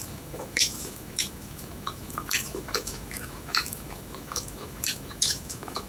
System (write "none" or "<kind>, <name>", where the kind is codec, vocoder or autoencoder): autoencoder, DAC-VAE